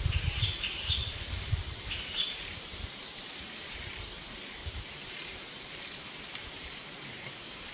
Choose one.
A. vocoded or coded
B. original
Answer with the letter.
A